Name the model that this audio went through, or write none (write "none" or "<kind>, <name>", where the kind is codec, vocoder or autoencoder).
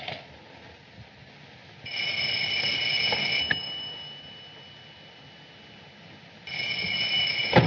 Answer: none